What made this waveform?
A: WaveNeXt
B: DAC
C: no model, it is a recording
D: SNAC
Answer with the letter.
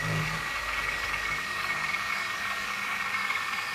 B